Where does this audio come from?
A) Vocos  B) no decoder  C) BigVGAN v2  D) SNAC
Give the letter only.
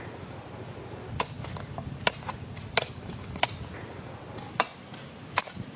B